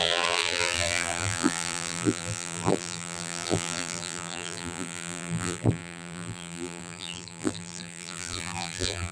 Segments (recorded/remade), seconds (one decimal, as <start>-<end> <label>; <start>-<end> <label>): 0.0-9.1 remade